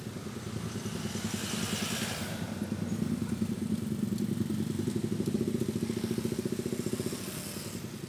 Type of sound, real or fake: real